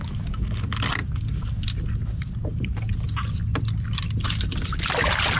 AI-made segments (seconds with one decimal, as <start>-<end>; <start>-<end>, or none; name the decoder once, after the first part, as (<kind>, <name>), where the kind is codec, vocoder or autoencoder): none